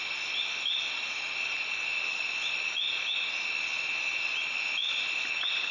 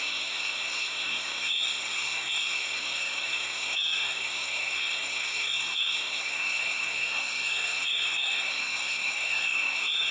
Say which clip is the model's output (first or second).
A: second